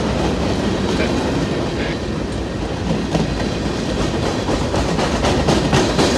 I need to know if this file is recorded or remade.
recorded